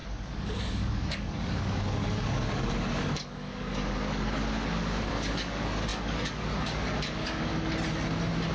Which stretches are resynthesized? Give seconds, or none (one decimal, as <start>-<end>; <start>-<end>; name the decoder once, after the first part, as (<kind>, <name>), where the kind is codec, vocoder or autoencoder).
0.0-7.5 (codec, DAC)